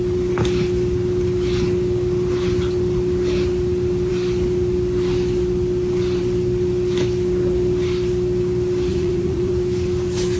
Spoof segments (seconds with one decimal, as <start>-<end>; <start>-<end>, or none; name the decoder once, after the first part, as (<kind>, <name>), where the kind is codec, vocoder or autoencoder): 8.9-9.5 (vocoder, Vocos)